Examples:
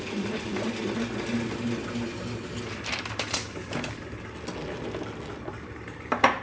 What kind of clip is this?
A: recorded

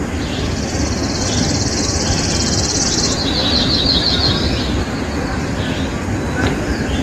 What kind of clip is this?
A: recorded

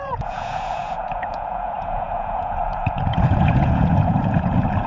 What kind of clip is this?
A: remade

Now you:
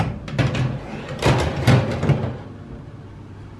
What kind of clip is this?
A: recorded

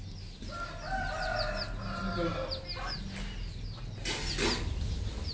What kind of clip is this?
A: recorded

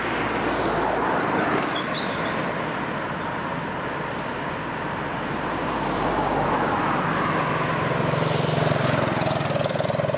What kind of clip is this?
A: recorded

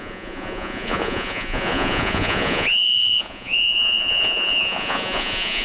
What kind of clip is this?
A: remade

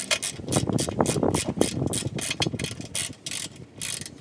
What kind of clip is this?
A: recorded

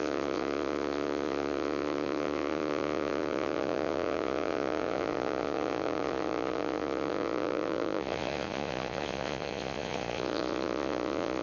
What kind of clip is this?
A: remade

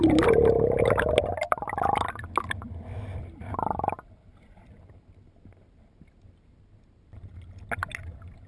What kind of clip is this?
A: recorded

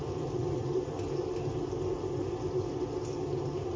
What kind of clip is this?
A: recorded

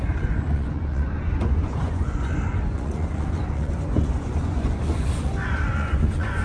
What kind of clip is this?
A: remade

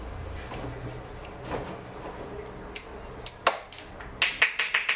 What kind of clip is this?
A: recorded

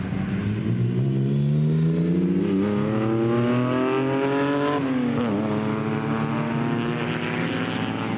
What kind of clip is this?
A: recorded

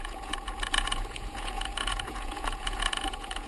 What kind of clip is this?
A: remade